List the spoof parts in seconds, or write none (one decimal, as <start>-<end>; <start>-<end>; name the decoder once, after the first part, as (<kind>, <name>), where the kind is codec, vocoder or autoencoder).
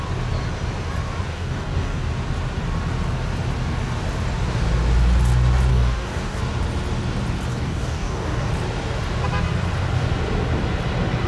1.3-2.1 (codec, DAC); 5.7-6.4; 7.5-8.5